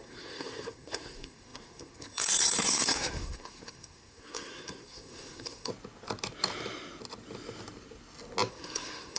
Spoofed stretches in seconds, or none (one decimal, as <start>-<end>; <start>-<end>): 0.0-5.7; 8.5-9.2